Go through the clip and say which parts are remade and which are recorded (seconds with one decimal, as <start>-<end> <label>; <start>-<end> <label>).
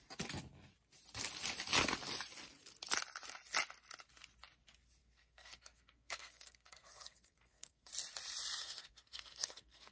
0.0-5.0 recorded; 5.0-7.9 remade; 7.9-8.6 recorded; 8.6-9.9 remade